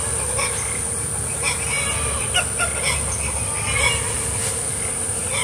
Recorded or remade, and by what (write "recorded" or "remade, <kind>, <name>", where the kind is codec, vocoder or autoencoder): recorded